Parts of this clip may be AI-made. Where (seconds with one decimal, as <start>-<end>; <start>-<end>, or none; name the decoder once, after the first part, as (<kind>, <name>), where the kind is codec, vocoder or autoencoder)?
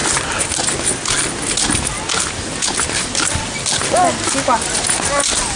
none